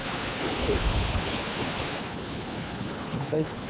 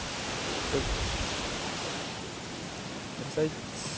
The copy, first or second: first